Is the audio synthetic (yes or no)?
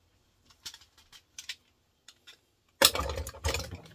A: no